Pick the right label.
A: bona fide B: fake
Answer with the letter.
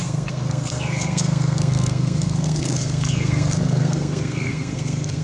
B